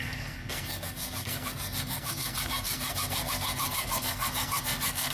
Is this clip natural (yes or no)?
no